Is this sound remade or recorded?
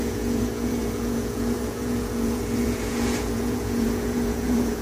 remade